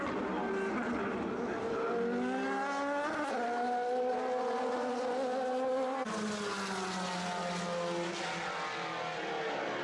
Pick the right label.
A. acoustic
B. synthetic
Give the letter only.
A